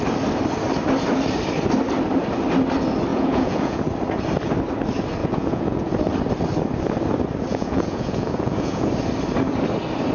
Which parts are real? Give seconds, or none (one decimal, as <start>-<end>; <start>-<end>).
0.0-3.1; 3.8-5.2; 5.9-7.5; 8.9-10.1